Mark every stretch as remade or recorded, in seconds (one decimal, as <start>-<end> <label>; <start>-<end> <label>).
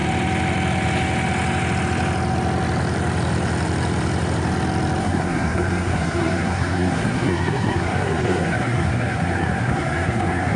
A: 0.0-5.0 recorded; 5.0-10.6 remade